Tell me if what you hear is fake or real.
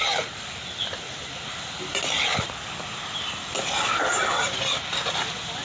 real